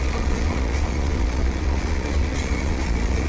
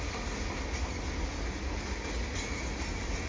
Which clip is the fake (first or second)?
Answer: first